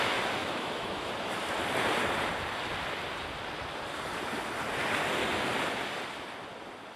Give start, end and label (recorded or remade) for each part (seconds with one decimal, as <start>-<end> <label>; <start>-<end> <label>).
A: 0.0-0.4 recorded; 0.4-1.1 remade; 1.1-7.0 recorded